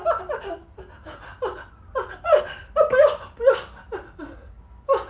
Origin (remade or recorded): recorded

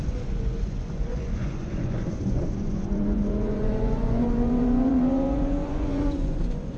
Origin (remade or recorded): remade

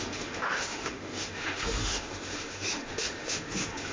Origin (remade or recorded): remade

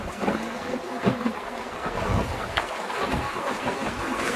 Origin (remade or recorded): remade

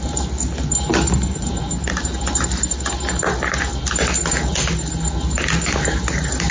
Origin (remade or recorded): recorded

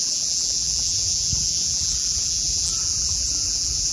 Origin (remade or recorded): remade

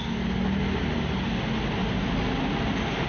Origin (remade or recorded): recorded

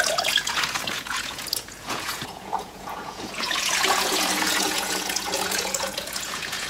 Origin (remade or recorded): remade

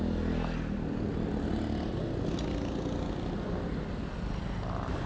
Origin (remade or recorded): recorded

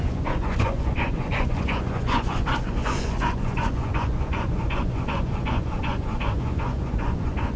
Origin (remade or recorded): remade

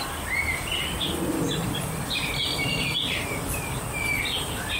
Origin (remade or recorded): recorded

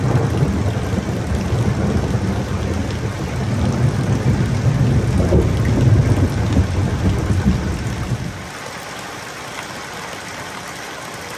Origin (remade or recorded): recorded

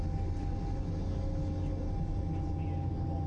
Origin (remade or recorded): recorded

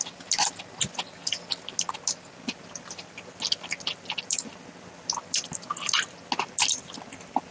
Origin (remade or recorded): recorded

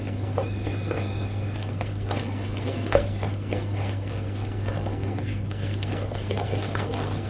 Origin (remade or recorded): remade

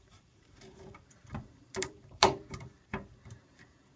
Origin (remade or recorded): remade